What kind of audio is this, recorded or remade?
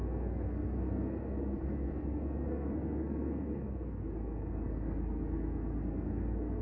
remade